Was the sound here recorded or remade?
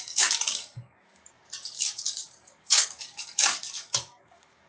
remade